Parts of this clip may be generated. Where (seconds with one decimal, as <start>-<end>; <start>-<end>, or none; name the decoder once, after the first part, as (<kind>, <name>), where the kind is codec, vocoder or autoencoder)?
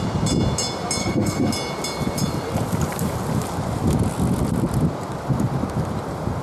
1.0-1.5 (codec, SNAC)